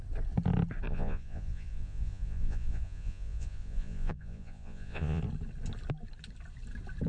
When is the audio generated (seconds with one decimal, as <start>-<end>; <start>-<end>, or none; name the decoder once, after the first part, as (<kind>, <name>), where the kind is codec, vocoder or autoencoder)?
0.9-5.2 (vocoder, Vocos)